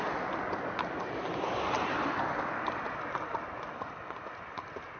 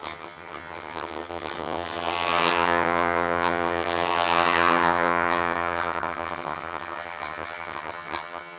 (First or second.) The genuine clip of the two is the first